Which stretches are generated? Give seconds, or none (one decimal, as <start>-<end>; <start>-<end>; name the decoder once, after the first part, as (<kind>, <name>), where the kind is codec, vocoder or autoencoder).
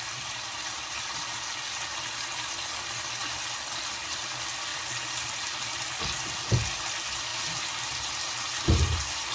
none